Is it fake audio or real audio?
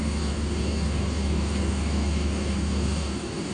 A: fake